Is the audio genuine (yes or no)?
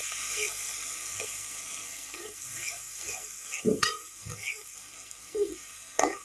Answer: no